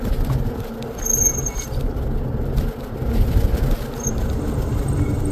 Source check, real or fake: real